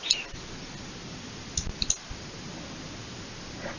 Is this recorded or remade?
recorded